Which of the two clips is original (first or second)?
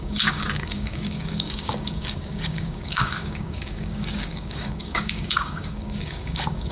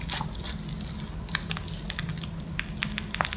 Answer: second